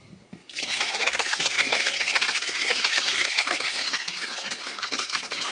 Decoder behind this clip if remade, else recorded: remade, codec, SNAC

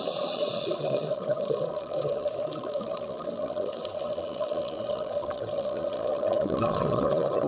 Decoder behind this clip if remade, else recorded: remade, vocoder, Vocos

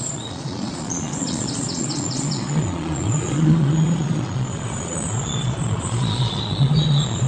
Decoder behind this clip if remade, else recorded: remade, vocoder, Vocos